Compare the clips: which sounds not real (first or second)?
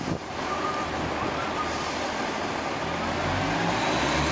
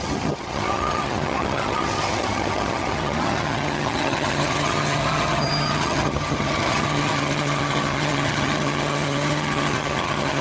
second